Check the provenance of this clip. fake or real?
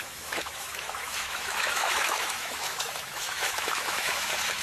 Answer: fake